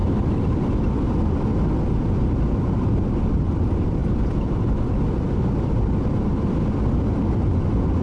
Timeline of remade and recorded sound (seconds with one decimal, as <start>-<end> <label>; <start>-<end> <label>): 0.0-8.0 recorded